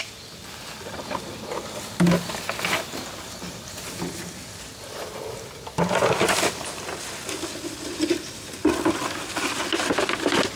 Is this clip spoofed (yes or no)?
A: no